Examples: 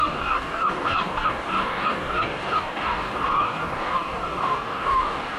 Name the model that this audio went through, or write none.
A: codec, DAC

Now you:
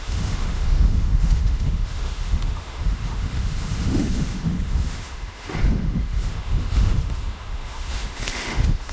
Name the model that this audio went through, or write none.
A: autoencoder, DAC-VAE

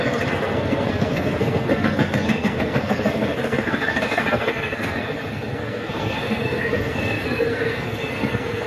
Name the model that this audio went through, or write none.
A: codec, SNAC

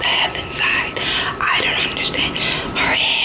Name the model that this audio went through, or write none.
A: none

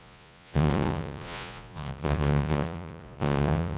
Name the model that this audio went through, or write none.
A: vocoder, Vocos